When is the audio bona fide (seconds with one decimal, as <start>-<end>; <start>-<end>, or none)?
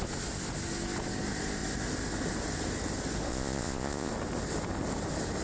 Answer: 0.0-3.3; 4.1-5.4